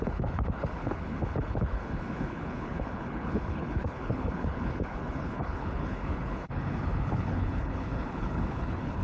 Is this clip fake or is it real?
fake